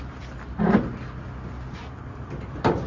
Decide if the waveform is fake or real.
real